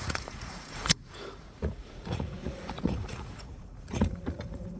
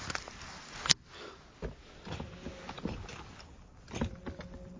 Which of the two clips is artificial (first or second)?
first